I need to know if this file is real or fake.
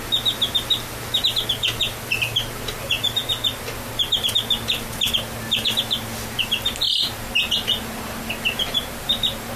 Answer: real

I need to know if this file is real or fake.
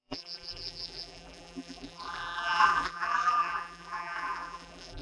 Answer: fake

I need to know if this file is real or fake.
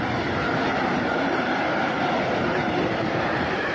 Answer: fake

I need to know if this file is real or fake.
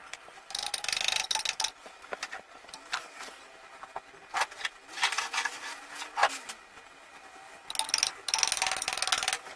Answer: real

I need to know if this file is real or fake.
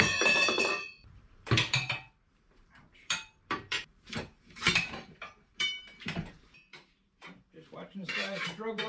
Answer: fake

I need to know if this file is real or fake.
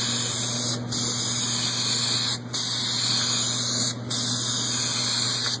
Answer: real